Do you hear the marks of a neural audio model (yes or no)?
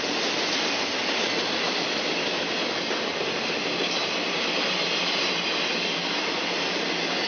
no